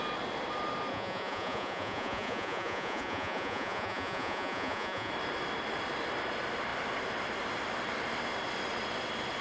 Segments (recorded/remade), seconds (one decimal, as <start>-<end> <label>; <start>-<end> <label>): 0.0-0.9 recorded; 0.9-5.1 remade; 5.1-9.4 recorded